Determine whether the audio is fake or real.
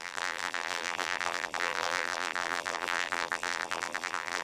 fake